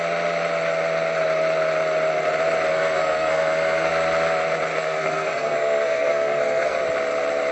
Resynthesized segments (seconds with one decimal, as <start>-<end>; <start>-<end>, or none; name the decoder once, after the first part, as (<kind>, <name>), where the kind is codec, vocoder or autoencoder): 2.7-3.9 (codec, SNAC); 4.7-6.8